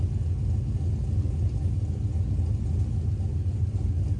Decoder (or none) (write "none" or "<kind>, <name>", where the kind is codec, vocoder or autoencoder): none